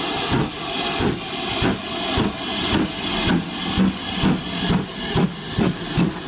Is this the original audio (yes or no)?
yes